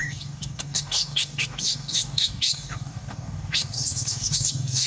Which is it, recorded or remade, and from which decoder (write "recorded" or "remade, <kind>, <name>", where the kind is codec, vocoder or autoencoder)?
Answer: remade, codec, DAC